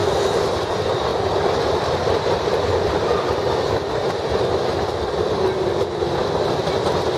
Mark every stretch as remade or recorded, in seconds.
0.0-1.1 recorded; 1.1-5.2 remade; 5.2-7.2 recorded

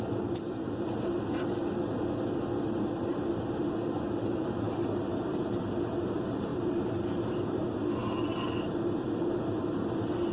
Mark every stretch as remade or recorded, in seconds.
0.0-1.6 remade; 1.6-2.8 recorded; 2.8-8.0 remade; 8.0-8.6 recorded; 8.6-10.3 remade

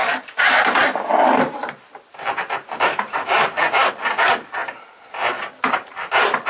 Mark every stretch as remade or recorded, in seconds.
0.0-3.9 remade; 3.9-4.6 recorded; 4.6-5.5 remade; 5.5-6.5 recorded

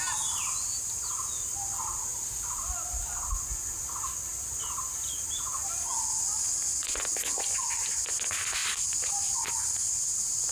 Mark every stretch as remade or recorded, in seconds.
0.0-10.5 recorded

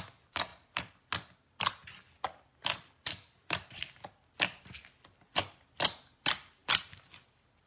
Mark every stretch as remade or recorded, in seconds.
0.0-7.7 recorded